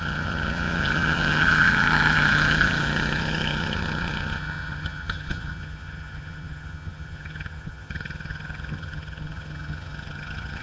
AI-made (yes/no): yes